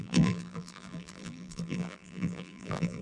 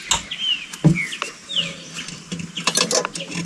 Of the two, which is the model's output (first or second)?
first